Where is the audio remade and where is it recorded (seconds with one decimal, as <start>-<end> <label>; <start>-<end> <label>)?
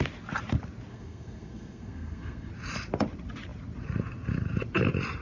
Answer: 0.0-0.9 recorded; 0.9-2.5 remade; 2.5-5.2 recorded